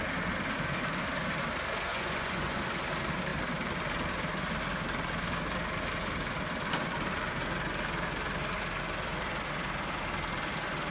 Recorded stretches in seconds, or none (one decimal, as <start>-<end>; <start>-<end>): 0.0-1.9; 2.6-10.9